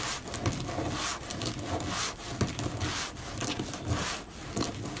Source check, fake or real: real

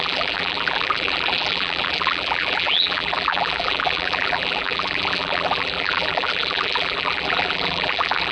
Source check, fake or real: fake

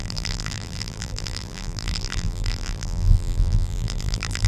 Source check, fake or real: fake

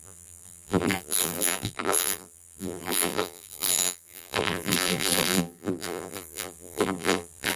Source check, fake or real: fake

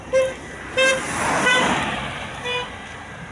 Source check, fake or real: fake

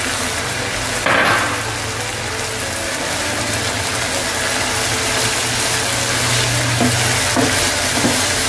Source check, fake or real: real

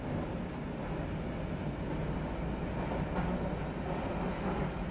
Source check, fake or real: real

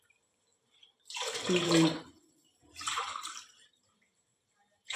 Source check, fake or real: fake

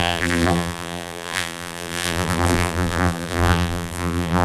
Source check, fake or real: fake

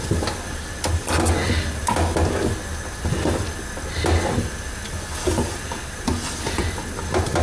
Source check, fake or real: real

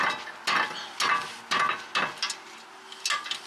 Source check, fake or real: real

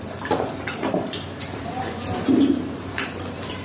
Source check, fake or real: fake